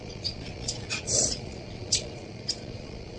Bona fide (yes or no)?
no